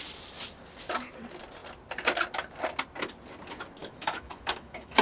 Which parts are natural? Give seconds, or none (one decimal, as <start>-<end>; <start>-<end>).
0.0-3.8